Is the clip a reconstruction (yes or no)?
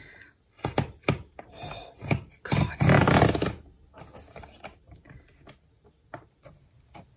no